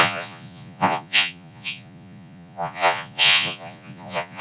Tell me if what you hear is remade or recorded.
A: remade